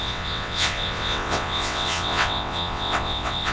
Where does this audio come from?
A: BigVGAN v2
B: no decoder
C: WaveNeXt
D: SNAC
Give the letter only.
C